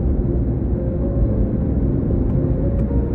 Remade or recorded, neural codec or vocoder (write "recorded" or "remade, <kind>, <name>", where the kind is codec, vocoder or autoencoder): recorded